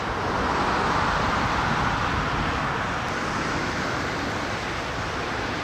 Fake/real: real